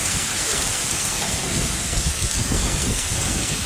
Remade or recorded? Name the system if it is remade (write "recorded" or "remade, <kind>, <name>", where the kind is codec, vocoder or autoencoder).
remade, codec, SNAC